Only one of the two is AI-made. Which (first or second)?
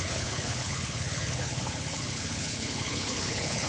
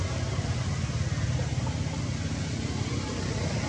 first